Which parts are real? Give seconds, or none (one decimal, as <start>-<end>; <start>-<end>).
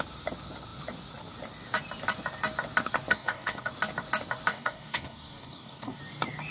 0.0-3.1; 3.7-4.5; 6.0-6.5